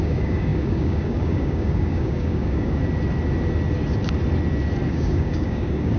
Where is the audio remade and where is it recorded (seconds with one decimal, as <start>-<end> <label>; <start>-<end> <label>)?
0.0-2.8 remade; 2.8-4.9 recorded; 4.9-6.0 remade